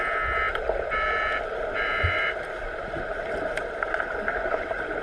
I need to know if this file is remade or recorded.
recorded